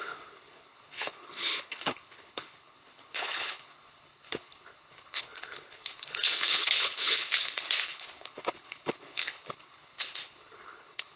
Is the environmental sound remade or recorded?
remade